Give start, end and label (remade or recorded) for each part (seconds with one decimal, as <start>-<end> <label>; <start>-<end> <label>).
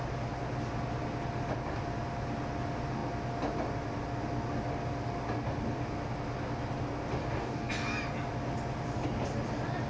0.0-7.2 recorded; 7.2-7.7 remade; 7.7-9.9 recorded